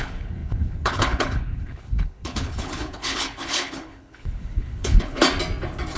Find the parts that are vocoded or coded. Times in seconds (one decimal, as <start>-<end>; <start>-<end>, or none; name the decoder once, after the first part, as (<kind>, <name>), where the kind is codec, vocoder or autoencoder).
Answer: 0.0-5.2 (codec, HILCodec)